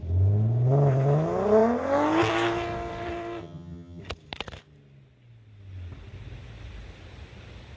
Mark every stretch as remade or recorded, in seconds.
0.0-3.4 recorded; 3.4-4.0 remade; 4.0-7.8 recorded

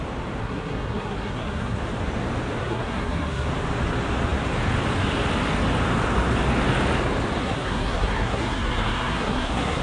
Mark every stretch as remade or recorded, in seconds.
0.0-0.4 recorded; 0.4-1.8 remade; 1.8-2.6 recorded; 2.6-3.5 remade; 3.5-7.4 recorded; 7.4-9.8 remade